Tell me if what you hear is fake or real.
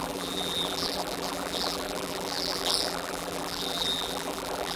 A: fake